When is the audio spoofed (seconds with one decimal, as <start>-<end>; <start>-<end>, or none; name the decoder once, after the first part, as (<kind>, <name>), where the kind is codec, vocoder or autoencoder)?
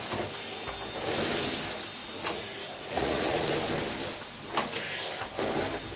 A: 2.0-3.5 (vocoder, Vocos)